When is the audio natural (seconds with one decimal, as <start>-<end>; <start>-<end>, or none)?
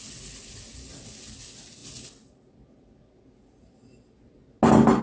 0.0-5.0